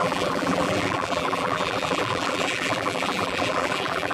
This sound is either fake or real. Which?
fake